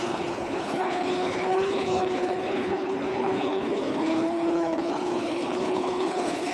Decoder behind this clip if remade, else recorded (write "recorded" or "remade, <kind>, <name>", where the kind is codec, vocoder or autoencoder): remade, codec, HILCodec